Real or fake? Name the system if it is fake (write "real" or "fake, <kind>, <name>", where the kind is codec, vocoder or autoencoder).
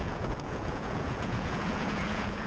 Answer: fake, vocoder, Vocos